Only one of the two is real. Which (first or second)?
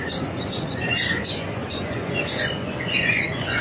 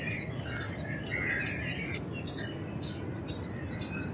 second